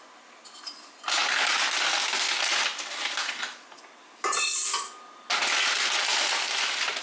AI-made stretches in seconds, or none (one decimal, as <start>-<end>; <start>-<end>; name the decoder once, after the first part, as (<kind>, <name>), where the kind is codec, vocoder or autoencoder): 6.1-7.0 (vocoder, BigVGAN v2)